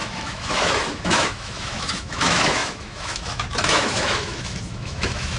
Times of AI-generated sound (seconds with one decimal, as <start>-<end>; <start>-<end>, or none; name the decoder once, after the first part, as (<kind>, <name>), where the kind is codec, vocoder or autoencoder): 0.0-5.4 (autoencoder, DAC-VAE)